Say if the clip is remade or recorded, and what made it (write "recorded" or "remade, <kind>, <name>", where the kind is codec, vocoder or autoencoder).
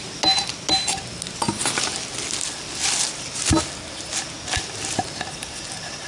recorded